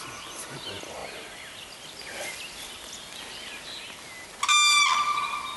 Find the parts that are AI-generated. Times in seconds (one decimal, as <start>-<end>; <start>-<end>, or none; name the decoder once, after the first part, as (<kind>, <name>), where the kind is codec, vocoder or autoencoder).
none